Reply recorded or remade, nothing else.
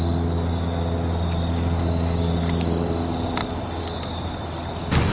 recorded